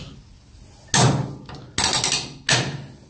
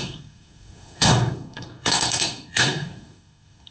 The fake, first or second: second